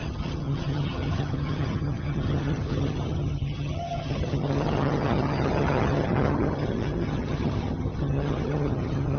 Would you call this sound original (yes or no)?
no